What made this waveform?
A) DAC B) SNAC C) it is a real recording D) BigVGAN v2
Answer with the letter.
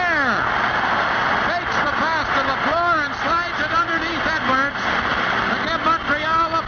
C